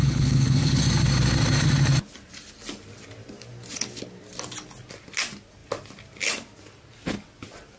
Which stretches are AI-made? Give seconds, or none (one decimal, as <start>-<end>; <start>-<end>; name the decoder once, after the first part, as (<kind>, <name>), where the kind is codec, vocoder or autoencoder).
0.0-0.8 (codec, HILCodec)